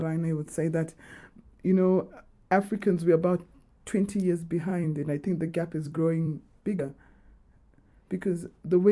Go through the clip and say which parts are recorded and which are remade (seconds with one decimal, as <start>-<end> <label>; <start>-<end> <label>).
0.0-4.7 recorded; 4.7-6.8 remade; 6.8-8.9 recorded